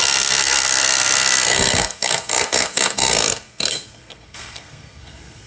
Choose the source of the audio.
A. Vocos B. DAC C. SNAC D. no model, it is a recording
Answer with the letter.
C